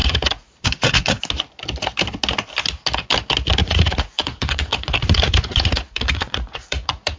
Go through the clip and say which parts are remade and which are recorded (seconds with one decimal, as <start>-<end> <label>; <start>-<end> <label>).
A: 0.0-1.2 remade; 1.2-3.6 recorded; 3.6-7.2 remade